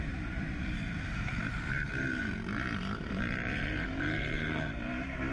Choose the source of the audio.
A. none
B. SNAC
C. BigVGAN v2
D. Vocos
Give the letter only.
C